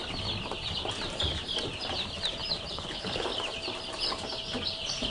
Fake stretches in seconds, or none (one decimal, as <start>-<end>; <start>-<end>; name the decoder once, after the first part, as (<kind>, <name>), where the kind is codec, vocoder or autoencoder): 2.7-3.3 (codec, HILCodec)

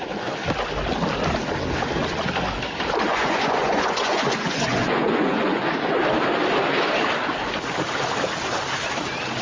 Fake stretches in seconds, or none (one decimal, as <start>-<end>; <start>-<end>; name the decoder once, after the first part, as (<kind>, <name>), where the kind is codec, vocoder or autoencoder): 3.1-5.7 (vocoder, Vocos)

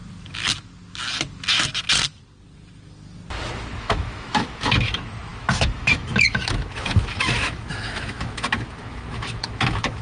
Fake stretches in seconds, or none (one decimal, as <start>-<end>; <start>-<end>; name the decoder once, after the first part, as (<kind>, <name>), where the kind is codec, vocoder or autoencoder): 3.8-10.0 (autoencoder, DAC-VAE)